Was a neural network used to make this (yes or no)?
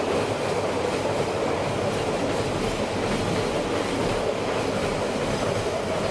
no